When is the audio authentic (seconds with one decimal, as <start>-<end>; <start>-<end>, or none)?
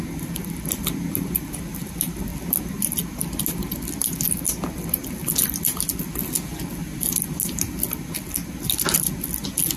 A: 0.0-9.8